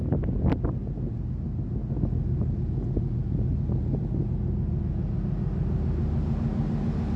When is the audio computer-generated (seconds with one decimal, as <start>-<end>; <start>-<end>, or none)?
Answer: none